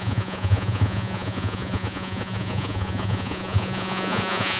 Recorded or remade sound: remade